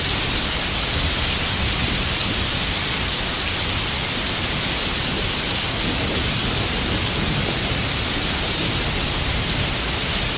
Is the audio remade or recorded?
recorded